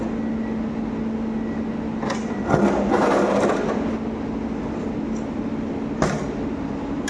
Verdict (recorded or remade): recorded